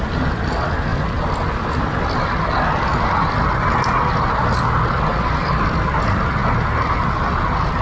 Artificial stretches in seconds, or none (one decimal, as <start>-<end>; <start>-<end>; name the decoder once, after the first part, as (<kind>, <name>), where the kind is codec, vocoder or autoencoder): none